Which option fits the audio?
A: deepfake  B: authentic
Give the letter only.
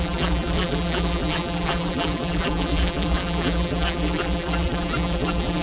A